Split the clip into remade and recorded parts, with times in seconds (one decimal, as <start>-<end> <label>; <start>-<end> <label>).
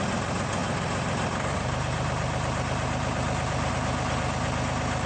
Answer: 0.0-5.1 recorded